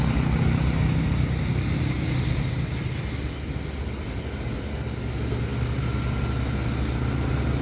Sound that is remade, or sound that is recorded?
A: recorded